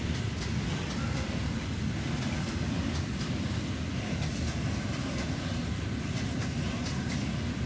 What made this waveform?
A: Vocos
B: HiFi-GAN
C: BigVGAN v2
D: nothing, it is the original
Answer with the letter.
D